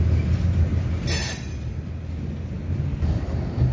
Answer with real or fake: real